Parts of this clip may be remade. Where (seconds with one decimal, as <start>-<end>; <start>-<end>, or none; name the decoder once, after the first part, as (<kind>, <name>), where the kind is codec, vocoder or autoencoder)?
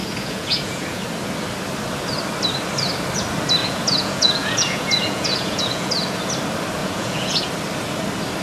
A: 0.0-1.0 (vocoder, Vocos); 3.6-5.9; 6.8-7.5